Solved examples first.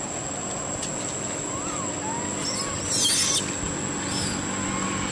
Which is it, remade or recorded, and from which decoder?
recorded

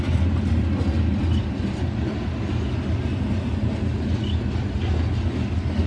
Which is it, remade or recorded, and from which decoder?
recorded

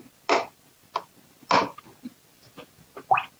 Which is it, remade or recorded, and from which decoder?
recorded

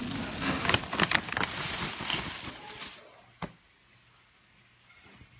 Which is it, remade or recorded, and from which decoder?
recorded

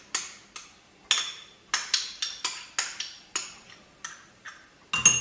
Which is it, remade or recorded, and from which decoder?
recorded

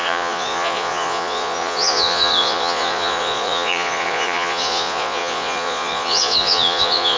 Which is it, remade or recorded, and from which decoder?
remade, vocoder, Vocos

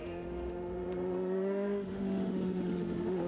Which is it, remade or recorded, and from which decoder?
remade, autoencoder, DAC-VAE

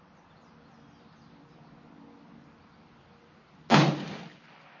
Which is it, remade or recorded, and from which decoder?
recorded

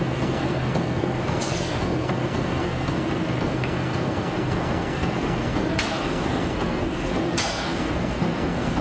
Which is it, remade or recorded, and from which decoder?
remade, codec, SNAC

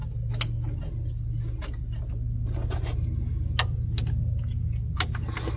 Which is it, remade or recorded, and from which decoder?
recorded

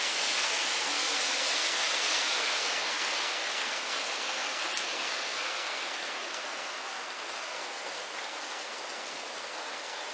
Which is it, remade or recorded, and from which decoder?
remade, codec, SNAC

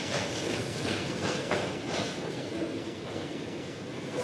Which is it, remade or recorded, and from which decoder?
remade, codec, SNAC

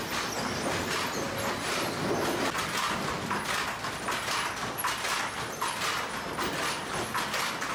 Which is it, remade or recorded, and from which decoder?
recorded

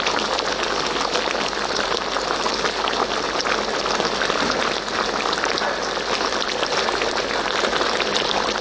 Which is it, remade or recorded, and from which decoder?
recorded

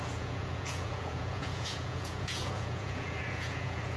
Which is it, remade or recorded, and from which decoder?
remade, vocoder, Vocos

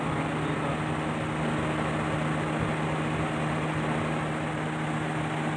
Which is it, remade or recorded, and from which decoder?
recorded